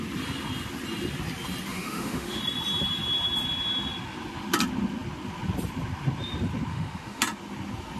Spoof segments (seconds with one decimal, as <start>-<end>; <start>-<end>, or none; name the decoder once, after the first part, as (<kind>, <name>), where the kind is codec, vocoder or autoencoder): 1.7-2.4 (autoencoder, DAC-VAE); 6.7-7.2